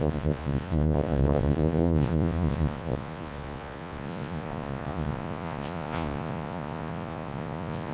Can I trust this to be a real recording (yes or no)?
no